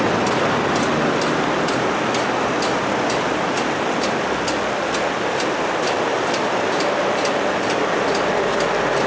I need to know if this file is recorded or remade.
recorded